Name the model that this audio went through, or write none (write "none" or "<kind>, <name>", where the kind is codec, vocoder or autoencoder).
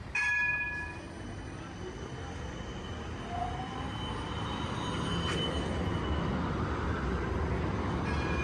none